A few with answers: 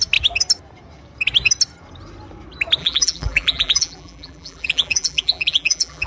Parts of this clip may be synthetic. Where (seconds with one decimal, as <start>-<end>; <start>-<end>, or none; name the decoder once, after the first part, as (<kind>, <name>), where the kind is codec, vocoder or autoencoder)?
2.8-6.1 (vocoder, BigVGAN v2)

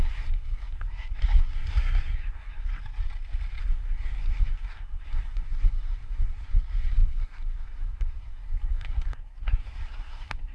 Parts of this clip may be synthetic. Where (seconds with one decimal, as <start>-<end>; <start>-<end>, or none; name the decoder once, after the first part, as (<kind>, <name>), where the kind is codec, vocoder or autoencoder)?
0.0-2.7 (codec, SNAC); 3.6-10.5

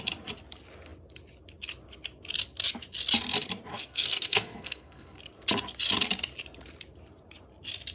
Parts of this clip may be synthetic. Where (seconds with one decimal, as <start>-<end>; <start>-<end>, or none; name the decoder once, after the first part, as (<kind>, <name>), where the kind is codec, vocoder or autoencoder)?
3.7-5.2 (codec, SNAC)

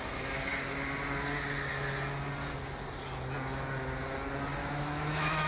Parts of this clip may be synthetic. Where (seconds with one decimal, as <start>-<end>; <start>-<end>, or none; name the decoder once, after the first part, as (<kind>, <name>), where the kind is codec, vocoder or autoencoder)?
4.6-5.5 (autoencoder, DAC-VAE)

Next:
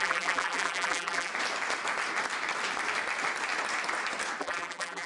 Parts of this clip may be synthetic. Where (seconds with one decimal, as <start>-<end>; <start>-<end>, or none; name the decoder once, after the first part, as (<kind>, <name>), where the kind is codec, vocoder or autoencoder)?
0.0-1.3 (vocoder, BigVGAN v2); 4.4-5.1

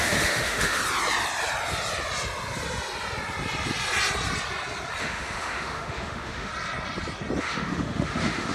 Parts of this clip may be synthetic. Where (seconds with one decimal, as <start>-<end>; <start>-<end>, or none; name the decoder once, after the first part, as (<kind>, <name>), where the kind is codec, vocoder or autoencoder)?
0.0-0.8 (autoencoder, DAC-VAE); 5.0-6.5; 7.4-8.5

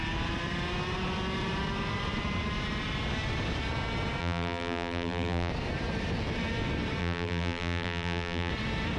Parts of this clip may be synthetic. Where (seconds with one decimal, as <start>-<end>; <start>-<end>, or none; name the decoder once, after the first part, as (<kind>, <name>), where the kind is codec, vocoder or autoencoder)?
4.2-5.5 (vocoder, BigVGAN v2); 7.0-8.5

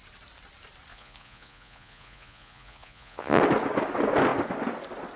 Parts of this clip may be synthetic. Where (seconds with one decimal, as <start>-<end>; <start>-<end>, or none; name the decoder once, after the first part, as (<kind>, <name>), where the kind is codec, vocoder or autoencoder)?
0.9-3.4 (vocoder, Vocos)